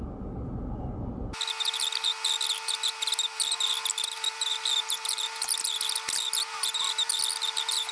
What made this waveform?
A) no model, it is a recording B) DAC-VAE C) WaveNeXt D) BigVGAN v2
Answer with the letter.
A